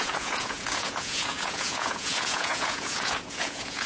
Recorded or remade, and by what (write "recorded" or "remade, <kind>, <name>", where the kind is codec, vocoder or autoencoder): remade, vocoder, Vocos